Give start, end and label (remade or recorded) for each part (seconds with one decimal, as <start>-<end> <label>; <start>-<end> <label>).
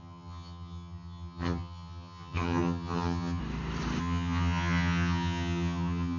0.0-3.4 remade; 3.4-4.0 recorded; 4.0-6.2 remade